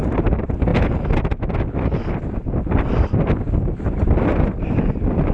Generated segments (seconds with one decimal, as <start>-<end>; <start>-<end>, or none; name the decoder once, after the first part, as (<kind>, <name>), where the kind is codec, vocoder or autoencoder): 0.0-0.7 (vocoder, BigVGAN v2); 3.9-5.3